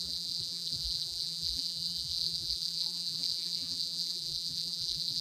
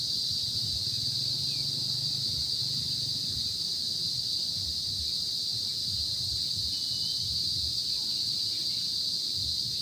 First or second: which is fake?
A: first